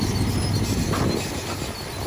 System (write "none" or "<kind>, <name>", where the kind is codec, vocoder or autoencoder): none